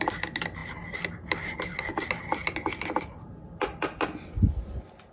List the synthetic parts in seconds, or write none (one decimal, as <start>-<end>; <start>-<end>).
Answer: none